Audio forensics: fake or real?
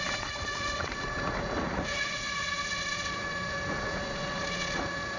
fake